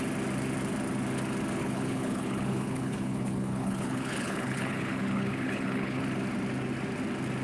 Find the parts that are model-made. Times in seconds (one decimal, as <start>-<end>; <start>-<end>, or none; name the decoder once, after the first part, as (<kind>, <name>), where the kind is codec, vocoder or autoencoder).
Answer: 1.6-6.0 (codec, HILCodec)